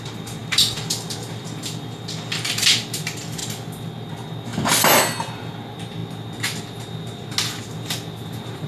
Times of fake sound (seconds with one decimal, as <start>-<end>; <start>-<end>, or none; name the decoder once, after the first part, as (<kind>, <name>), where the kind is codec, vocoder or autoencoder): 0.0-3.4 (vocoder, BigVGAN v2); 4.1-4.5; 5.3-6.0; 7.6-8.7